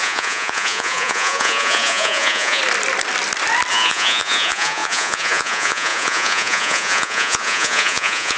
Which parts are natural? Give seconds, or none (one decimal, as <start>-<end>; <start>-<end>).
2.6-3.7